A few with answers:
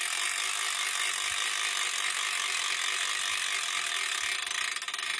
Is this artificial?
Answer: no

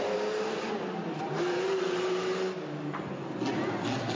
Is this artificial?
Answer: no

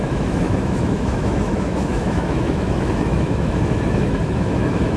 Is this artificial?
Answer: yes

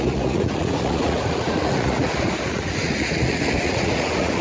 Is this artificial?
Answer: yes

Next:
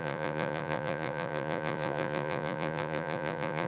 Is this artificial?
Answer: yes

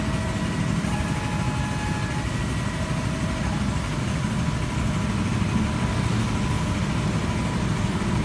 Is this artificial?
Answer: no